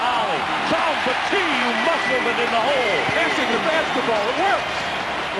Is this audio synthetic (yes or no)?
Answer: yes